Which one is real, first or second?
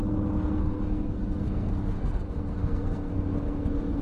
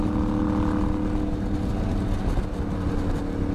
second